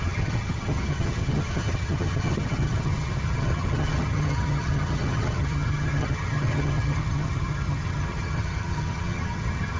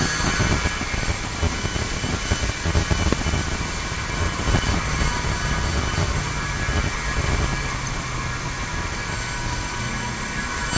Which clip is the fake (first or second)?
first